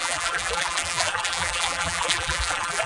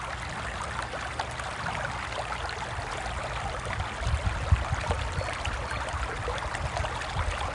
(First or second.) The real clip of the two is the second